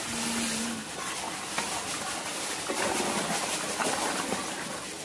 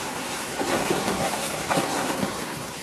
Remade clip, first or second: second